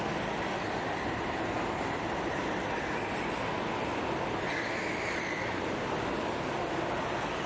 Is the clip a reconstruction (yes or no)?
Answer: no